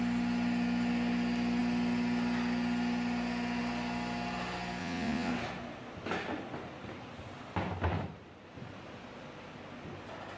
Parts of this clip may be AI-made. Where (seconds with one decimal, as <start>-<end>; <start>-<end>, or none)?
4.8-5.3